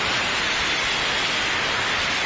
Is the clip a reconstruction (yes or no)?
no